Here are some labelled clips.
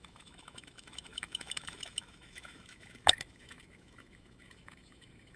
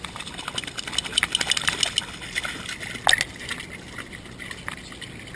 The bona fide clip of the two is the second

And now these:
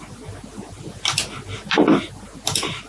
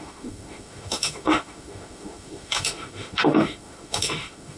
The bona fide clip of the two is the first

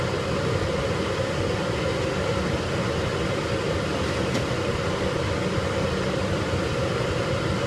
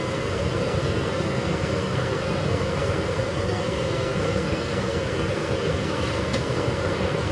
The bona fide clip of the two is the first